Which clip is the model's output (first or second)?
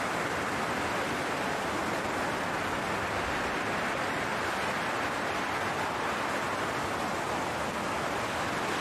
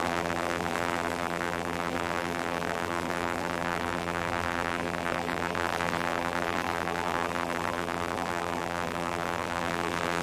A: second